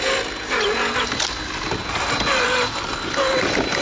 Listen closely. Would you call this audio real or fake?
real